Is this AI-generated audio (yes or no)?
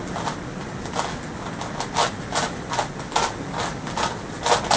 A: no